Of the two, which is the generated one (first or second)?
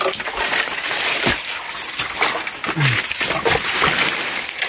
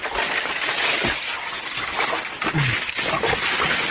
first